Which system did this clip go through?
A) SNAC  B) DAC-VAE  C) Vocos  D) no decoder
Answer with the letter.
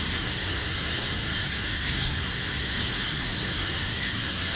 A